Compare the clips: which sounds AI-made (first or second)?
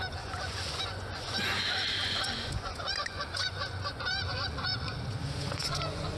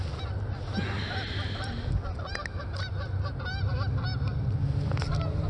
first